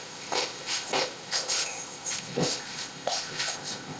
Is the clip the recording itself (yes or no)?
no